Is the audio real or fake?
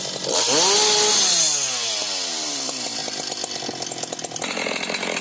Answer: real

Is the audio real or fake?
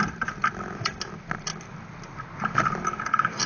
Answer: real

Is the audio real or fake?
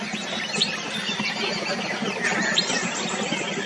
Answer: real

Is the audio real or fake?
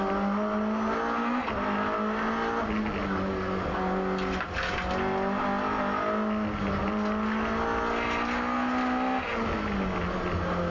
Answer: real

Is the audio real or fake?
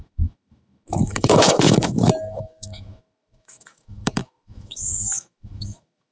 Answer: fake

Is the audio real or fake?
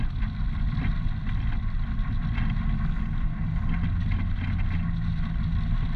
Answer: real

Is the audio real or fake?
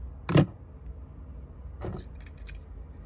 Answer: real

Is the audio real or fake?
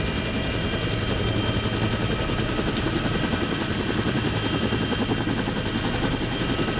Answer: real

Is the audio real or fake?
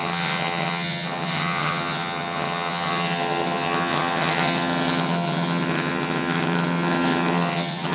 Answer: fake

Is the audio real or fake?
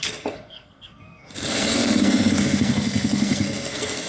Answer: fake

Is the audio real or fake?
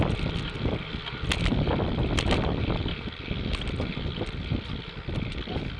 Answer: real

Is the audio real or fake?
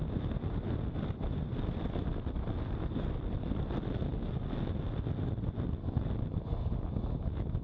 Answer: real